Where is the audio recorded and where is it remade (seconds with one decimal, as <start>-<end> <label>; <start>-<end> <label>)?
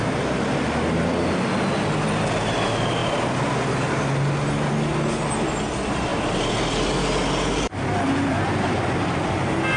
0.0-6.1 recorded; 6.1-8.4 remade; 8.4-9.8 recorded